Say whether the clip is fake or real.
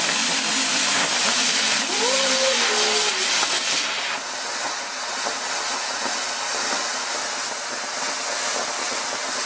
real